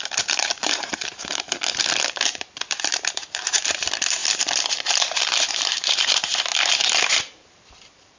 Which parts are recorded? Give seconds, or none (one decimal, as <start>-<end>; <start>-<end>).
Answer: 4.2-5.5; 6.5-7.2

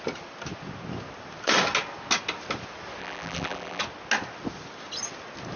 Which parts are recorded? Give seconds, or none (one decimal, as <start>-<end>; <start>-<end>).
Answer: 0.0-3.0; 3.8-5.6

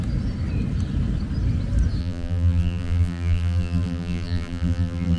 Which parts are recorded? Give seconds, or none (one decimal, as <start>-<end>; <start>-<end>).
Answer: 0.0-2.0

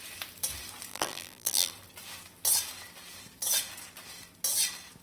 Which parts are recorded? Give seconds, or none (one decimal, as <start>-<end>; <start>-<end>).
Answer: 0.0-0.9; 1.7-5.0

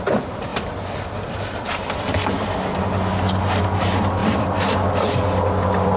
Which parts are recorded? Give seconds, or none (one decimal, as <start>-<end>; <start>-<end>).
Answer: 0.0-0.5; 2.3-4.2; 4.9-6.0

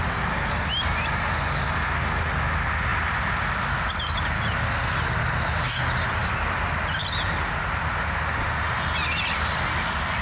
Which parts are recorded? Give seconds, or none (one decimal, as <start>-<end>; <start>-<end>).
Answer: 0.0-10.2